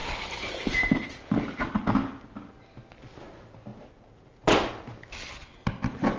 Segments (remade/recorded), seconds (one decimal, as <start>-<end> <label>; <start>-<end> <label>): 0.0-6.2 recorded